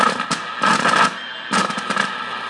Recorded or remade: recorded